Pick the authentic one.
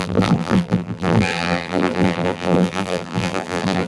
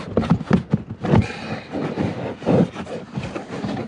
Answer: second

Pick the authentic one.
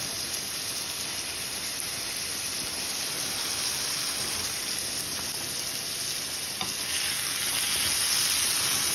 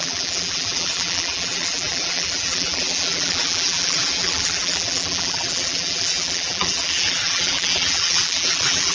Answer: first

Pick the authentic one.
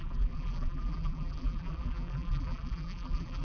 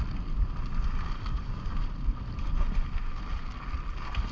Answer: second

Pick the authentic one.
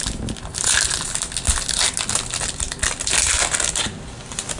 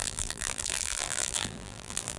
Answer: first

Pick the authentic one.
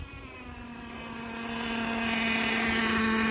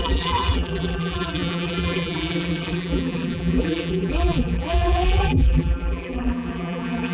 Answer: first